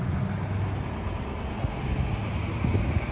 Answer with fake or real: real